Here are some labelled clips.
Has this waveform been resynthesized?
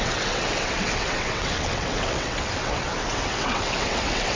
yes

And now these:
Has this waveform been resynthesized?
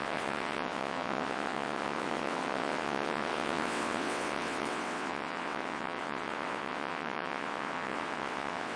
yes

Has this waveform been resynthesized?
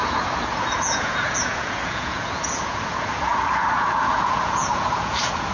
yes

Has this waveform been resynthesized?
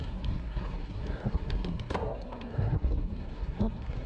yes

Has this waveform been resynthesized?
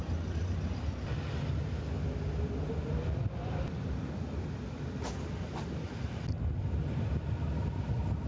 no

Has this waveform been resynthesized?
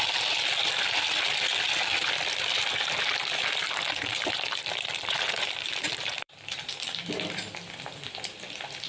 yes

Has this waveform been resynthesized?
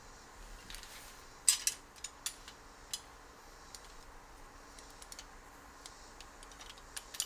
no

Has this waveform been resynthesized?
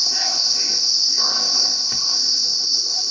yes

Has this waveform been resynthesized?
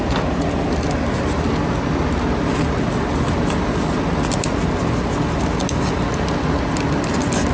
no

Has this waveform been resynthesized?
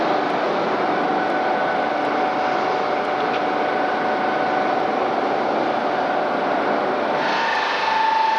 no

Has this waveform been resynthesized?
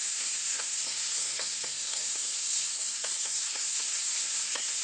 yes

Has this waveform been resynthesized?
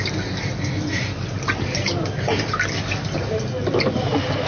no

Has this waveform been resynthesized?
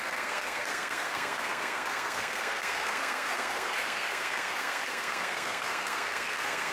yes